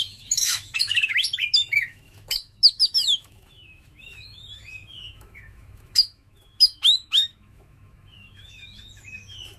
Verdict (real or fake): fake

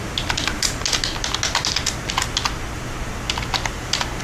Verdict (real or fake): real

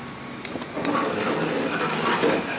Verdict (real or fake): real